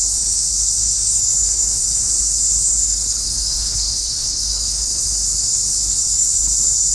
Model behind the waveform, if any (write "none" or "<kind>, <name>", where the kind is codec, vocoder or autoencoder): codec, HILCodec